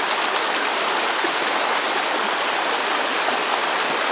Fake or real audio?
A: real